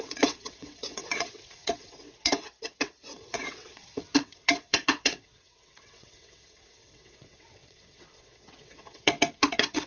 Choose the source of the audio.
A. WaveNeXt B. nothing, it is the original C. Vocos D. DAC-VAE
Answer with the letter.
A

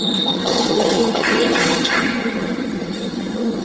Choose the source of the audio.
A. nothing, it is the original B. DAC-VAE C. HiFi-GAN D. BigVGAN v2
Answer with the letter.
C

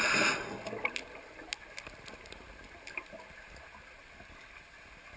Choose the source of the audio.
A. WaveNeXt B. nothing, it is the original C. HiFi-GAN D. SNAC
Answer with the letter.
B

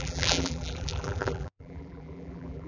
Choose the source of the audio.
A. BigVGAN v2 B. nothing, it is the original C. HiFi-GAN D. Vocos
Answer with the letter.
A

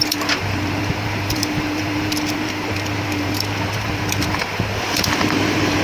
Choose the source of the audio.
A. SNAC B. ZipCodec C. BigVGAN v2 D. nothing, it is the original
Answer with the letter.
C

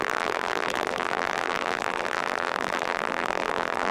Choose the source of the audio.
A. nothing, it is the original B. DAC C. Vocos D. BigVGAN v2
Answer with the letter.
D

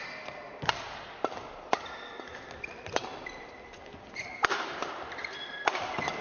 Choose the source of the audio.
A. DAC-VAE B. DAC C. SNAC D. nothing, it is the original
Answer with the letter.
D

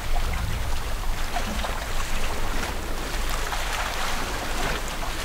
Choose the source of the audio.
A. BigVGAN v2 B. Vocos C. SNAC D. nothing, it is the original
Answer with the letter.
D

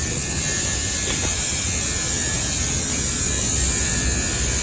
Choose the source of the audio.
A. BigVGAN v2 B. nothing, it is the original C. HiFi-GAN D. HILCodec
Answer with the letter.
B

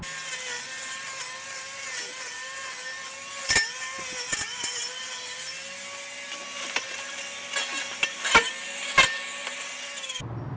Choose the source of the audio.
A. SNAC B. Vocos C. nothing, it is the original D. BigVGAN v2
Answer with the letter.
C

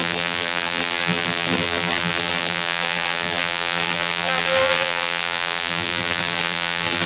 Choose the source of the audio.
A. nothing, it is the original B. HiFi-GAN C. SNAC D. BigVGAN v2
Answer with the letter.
D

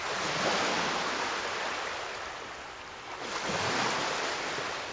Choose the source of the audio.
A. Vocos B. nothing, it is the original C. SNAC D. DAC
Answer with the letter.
B